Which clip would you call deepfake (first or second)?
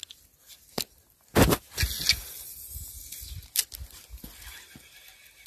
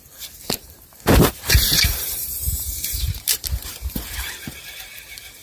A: second